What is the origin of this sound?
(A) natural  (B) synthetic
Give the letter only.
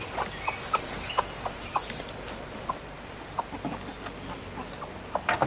A